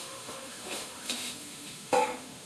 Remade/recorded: remade